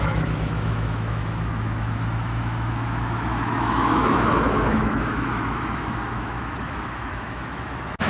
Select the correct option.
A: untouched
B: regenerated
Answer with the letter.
B